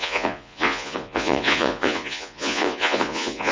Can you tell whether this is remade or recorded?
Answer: remade